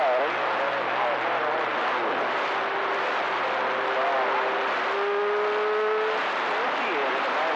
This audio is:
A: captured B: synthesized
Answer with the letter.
A